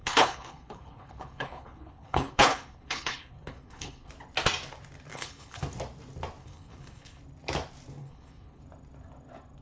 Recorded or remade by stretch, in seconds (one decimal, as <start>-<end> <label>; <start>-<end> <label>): 0.0-4.1 remade; 4.1-5.1 recorded; 5.1-5.6 remade; 5.6-6.4 recorded; 6.4-7.2 remade; 7.2-8.0 recorded; 8.0-8.6 remade; 8.6-9.6 recorded